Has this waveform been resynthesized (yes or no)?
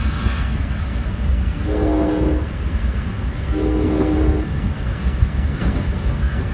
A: yes